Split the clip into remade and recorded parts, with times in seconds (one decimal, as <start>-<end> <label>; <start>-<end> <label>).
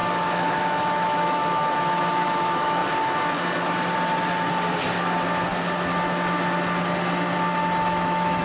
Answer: 0.0-2.8 remade; 2.8-7.8 recorded; 7.8-8.4 remade